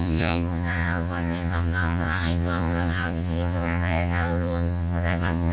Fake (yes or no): yes